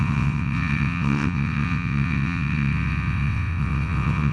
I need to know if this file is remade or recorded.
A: remade